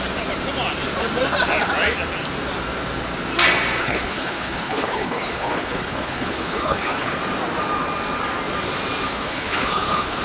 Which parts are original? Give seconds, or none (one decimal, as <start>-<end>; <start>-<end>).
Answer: 0.0-3.8; 7.2-9.1